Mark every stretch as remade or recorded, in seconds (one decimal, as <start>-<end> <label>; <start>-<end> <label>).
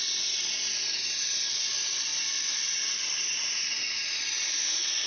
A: 0.0-5.1 recorded